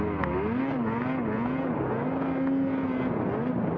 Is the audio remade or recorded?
recorded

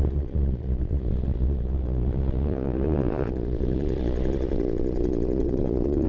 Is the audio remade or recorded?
remade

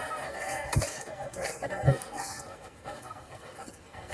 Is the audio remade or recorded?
remade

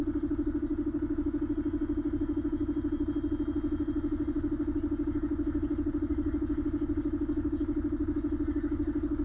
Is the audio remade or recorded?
recorded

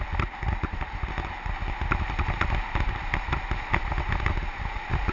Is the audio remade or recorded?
recorded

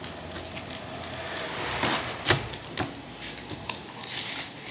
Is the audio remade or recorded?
recorded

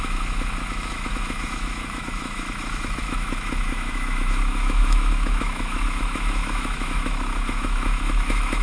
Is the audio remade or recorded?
remade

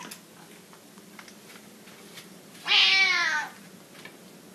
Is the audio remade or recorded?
recorded